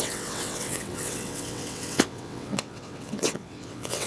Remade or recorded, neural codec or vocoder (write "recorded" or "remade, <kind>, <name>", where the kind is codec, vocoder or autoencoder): remade, vocoder, WaveNeXt